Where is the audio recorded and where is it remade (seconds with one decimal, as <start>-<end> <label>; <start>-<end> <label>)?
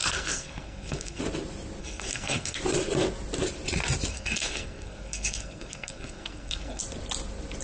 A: 0.0-1.2 remade; 1.2-1.8 recorded; 1.8-2.6 remade; 2.6-4.1 recorded; 4.1-6.8 remade; 6.8-7.6 recorded